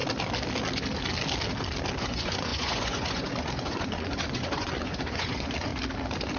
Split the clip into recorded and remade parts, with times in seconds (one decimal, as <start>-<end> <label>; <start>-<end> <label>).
0.0-2.0 recorded; 2.0-5.7 remade; 5.7-6.4 recorded